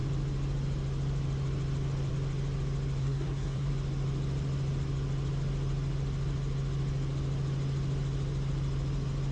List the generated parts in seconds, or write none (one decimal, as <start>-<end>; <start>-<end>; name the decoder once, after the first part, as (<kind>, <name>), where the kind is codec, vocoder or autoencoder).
3.0-3.7 (codec, SNAC)